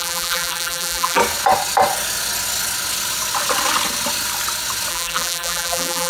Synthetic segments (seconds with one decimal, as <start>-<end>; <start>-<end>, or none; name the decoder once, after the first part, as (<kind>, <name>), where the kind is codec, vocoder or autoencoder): 0.0-1.2 (vocoder, BigVGAN v2); 4.9-6.1